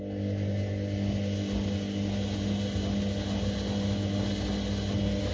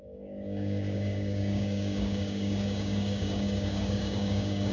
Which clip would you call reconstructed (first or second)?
second